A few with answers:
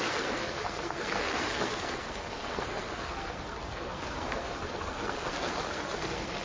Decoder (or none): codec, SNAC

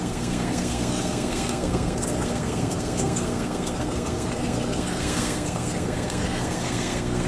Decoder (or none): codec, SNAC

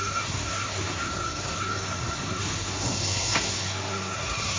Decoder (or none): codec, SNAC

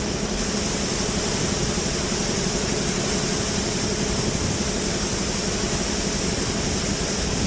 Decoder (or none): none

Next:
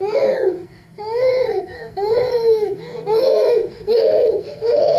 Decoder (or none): codec, SNAC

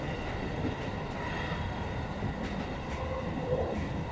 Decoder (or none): none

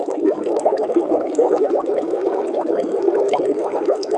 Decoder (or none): codec, SNAC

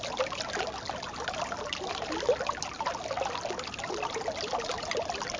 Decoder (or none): none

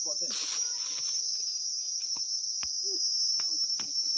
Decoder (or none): none